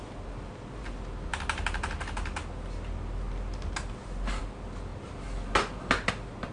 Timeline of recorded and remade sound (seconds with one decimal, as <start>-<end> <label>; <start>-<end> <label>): 0.0-6.5 recorded